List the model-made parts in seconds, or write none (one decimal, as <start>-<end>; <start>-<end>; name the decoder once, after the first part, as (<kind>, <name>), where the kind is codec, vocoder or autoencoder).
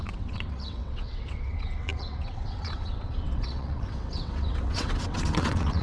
0.0-5.8 (vocoder, WaveNeXt)